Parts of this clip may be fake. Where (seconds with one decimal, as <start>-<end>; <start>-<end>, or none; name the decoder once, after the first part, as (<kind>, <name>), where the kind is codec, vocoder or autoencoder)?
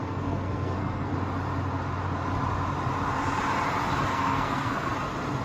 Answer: 0.0-1.1 (codec, SNAC); 4.1-4.9